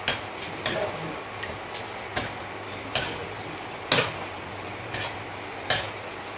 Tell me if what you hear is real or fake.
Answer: real